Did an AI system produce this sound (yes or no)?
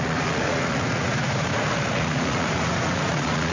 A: yes